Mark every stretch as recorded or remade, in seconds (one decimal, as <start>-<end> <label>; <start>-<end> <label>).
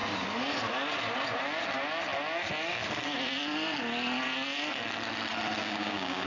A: 0.0-5.6 recorded; 5.6-6.3 remade